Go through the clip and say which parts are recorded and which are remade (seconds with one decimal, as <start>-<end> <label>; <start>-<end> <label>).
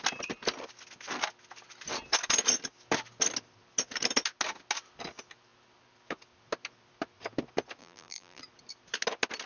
0.0-7.8 recorded; 7.8-8.4 remade; 8.4-9.5 recorded